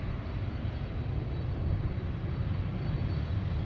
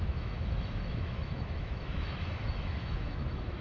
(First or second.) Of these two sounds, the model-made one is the second